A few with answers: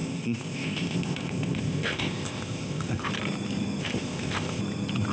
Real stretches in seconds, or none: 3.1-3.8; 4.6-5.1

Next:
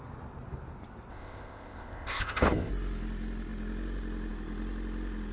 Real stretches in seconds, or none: 0.0-1.1; 2.7-5.3

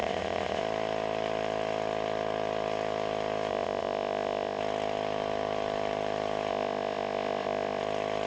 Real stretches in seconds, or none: 0.6-3.5; 4.6-6.5; 7.8-8.3

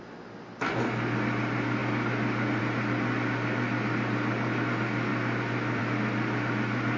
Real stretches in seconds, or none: 0.0-7.0